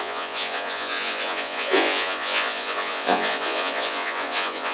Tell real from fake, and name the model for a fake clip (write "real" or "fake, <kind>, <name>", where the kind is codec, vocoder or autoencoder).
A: fake, vocoder, Vocos